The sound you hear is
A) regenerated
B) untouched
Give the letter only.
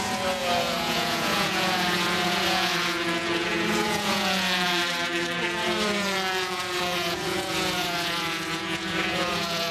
A